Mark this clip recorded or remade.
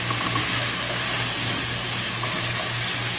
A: recorded